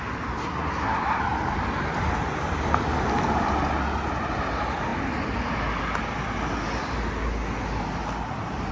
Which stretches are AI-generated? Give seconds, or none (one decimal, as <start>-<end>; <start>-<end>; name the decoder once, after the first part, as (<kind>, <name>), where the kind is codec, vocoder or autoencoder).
0.4-1.2 (codec, SNAC)